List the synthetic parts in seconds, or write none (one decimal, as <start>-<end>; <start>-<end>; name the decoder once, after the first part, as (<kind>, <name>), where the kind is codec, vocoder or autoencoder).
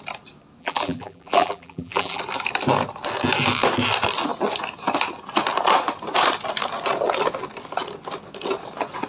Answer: 0.6-2.2 (vocoder, BigVGAN v2)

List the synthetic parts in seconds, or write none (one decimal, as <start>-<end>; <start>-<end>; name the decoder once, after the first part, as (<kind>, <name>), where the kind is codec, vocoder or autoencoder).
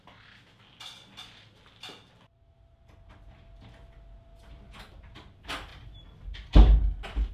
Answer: none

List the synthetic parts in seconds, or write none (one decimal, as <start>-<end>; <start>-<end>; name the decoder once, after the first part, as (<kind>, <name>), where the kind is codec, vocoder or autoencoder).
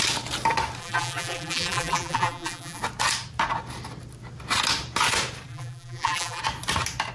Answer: 0.8-2.8 (vocoder, BigVGAN v2); 5.5-6.4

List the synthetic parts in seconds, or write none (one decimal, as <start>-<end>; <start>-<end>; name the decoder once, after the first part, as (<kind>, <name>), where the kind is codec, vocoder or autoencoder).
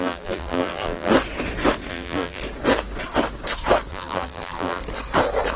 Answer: 0.0-1.1 (vocoder, BigVGAN v2); 1.9-2.4; 3.9-4.8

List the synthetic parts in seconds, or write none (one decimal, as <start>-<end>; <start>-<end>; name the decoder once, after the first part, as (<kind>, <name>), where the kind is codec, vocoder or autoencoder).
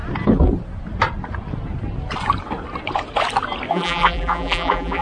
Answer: 3.7-5.0 (vocoder, BigVGAN v2)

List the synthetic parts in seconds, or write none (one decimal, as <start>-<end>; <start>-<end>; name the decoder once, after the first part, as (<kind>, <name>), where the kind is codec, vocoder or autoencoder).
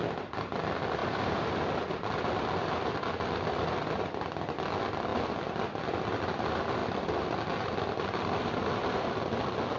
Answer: 1.0-1.6 (vocoder, BigVGAN v2)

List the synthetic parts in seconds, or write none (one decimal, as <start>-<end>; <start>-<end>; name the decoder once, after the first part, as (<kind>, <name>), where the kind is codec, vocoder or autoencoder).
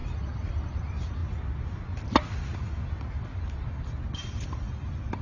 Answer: 0.0-1.2 (vocoder, BigVGAN v2); 4.3-5.2